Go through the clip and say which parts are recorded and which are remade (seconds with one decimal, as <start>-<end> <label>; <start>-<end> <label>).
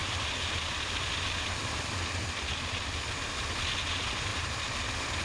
0.0-3.1 remade; 3.1-4.3 recorded; 4.3-5.2 remade